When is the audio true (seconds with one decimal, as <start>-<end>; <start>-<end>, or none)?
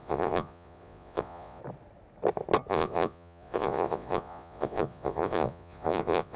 1.6-2.7